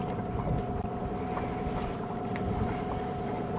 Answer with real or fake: real